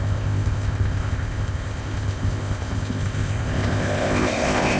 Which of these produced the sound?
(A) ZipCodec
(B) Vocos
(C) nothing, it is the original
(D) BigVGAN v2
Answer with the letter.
A